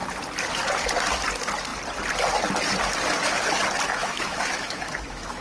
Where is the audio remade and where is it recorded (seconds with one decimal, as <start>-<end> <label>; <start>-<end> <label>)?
0.0-3.9 recorded; 3.9-5.4 remade